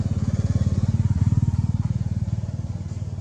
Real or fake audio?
real